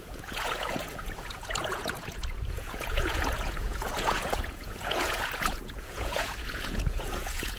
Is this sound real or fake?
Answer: fake